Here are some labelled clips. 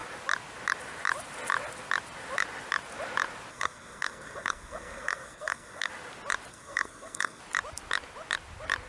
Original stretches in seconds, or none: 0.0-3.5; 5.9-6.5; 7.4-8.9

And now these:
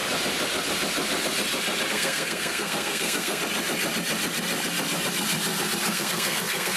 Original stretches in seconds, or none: 0.0-1.9; 3.4-5.9

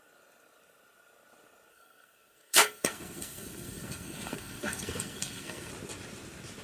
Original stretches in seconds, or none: 0.0-1.7; 5.7-6.6

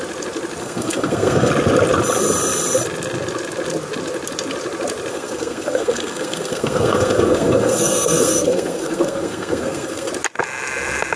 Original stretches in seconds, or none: 0.0-0.6; 1.5-5.1; 10.1-11.2

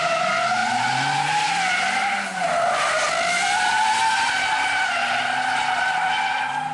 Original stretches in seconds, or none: 0.0-6.7

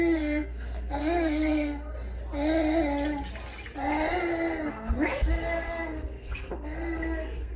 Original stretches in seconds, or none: 1.9-4.7

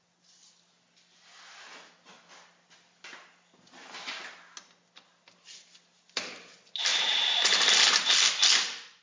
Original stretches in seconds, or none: 0.0-9.0